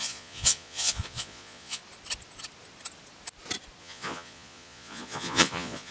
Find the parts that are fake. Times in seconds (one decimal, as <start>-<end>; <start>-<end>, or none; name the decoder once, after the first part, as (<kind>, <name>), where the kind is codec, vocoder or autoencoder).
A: 0.0-1.8 (vocoder, Vocos); 3.8-5.9